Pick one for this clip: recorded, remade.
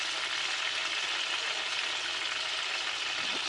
recorded